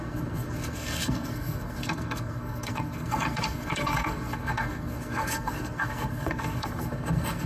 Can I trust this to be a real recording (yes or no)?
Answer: no